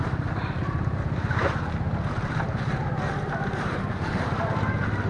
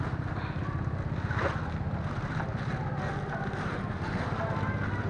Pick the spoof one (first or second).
first